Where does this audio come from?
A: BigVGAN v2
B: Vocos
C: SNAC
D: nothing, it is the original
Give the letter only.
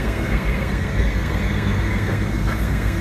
C